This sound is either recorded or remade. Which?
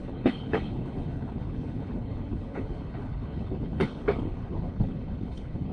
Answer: remade